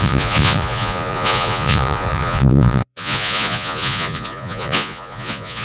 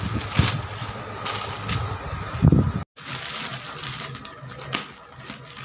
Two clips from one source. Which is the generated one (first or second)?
first